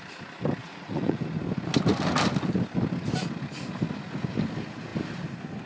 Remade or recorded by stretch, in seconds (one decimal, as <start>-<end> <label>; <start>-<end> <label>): 0.0-0.6 recorded; 0.6-1.2 remade; 1.2-5.7 recorded